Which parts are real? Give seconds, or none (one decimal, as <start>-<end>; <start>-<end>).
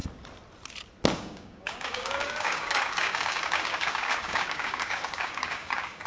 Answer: 0.0-1.1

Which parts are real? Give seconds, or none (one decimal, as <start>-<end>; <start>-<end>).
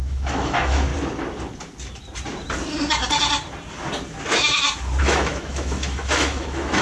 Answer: 0.9-5.0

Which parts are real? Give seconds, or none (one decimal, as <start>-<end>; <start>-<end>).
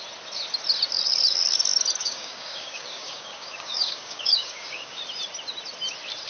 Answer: 0.0-2.0; 5.0-6.3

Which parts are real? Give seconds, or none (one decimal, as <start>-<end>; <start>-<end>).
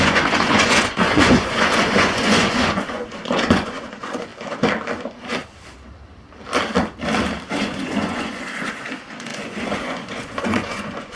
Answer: 4.3-7.5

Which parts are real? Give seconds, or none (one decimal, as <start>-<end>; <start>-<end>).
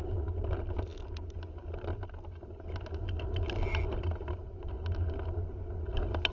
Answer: 0.0-6.3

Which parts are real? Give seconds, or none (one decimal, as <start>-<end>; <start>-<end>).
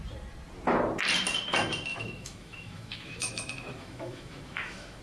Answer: 0.0-1.9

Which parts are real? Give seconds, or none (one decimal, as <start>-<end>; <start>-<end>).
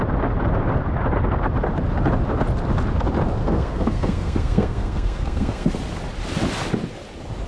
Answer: 0.0-3.4; 5.7-7.5